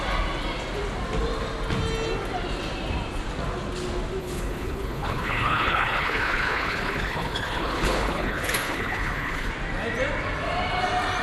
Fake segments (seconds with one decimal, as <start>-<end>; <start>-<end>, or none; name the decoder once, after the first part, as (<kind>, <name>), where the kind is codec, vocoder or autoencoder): 4.2-9.5 (codec, HILCodec)